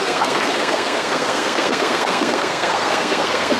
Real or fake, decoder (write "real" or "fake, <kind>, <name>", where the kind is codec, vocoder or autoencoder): fake, codec, SNAC